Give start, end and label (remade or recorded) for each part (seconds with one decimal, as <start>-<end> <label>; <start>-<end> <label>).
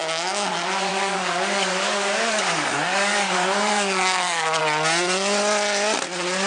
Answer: 0.0-0.5 remade; 0.5-0.9 recorded; 0.9-4.6 remade; 4.6-6.5 recorded